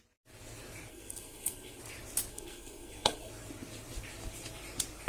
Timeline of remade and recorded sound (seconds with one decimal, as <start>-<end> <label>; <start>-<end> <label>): 0.0-0.9 recorded; 0.9-1.8 remade; 1.8-2.3 recorded; 2.3-3.3 remade; 3.3-5.1 recorded